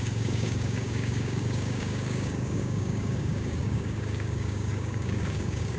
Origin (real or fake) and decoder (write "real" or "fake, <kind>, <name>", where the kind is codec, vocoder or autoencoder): fake, codec, DAC